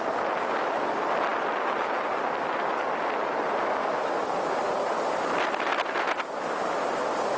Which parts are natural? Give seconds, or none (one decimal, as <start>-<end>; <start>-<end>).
0.0-7.4